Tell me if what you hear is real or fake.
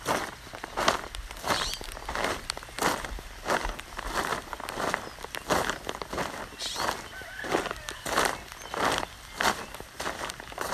real